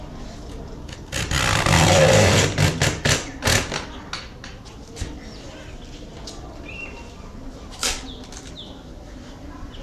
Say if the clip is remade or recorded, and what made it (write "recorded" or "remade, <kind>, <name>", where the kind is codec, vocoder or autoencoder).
recorded